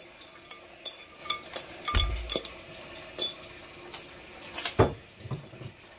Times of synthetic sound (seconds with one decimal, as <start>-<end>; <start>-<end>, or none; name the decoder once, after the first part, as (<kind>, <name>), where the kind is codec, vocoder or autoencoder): none